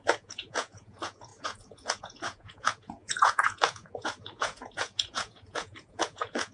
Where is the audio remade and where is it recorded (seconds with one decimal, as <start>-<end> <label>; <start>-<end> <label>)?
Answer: 0.0-6.5 remade